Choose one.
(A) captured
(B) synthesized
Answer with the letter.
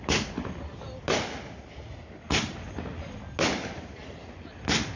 A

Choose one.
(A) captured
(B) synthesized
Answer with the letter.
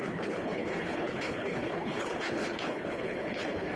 B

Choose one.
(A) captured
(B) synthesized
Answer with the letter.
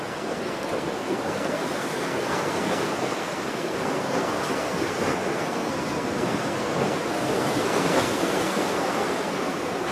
B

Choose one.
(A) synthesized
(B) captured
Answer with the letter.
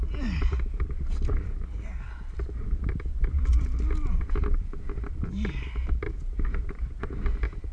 B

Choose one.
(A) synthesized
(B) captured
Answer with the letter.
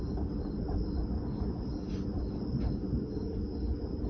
B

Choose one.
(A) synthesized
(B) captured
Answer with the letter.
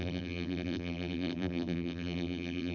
A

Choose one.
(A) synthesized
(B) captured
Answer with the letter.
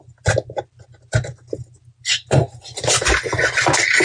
B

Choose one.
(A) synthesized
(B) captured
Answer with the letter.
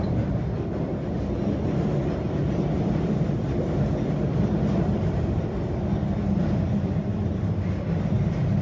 B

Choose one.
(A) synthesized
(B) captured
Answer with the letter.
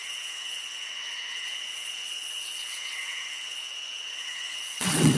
A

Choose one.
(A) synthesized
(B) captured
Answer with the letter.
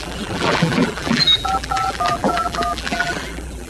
A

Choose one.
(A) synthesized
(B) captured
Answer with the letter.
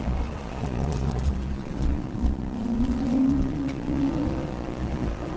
A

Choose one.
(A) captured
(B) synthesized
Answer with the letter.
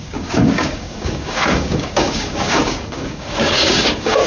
B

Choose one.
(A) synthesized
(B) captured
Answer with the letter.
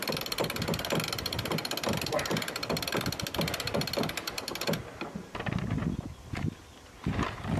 B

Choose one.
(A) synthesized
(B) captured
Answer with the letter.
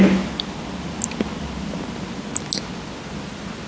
B